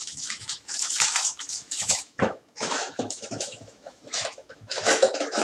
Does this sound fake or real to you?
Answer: fake